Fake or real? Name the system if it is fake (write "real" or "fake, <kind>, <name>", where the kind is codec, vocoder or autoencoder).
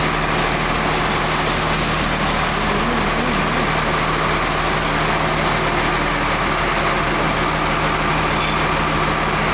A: real